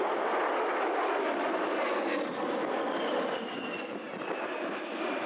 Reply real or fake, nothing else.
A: real